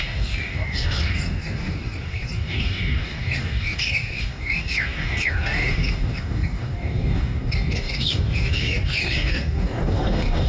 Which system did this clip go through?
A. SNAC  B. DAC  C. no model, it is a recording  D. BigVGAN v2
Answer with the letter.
B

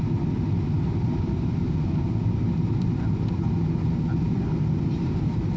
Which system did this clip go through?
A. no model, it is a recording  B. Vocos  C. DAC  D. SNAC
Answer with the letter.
A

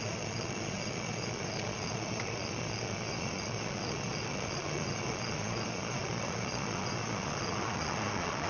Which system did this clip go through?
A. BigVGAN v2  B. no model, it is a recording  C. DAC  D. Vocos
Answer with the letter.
D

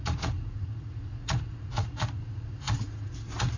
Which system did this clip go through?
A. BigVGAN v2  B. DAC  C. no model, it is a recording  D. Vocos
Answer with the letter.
D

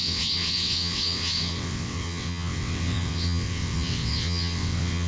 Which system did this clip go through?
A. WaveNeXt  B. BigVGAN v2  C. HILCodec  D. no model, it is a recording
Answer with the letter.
A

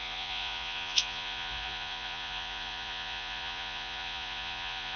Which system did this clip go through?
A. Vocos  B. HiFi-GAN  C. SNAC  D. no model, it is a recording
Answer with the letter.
A